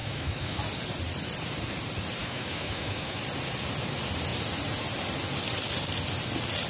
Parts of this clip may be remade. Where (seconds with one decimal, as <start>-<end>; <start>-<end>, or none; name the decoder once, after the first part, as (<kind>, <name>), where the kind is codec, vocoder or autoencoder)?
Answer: 0.0-0.6 (autoencoder, DAC-VAE); 2.2-3.2